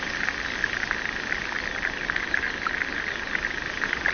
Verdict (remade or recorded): recorded